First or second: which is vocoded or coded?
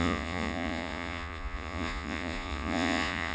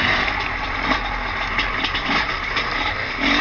first